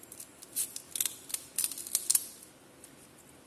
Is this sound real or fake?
real